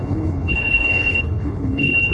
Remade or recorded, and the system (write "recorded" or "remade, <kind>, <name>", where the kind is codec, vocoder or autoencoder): remade, codec, HILCodec